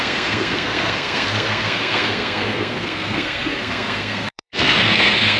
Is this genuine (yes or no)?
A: no